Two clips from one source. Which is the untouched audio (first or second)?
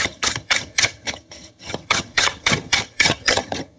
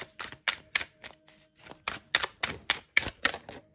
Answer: second